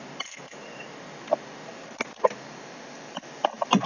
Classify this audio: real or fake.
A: real